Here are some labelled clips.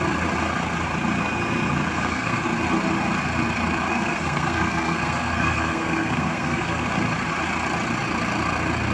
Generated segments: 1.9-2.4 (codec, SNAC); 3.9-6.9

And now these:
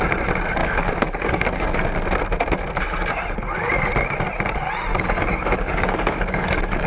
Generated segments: 0.6-1.8 (codec, DAC); 4.9-6.9

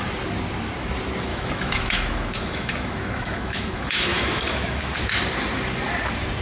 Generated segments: 1.3-5.1 (autoencoder, DAC-VAE)

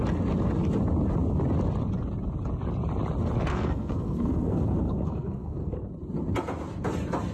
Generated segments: 3.5-5.9 (codec, SNAC)

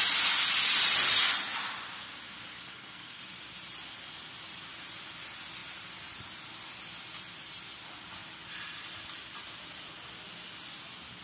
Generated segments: 2.5-3.2 (codec, SNAC)

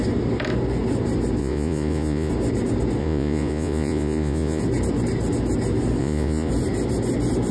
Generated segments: 1.4-2.3 (vocoder, Vocos); 3.0-4.6; 6.0-6.5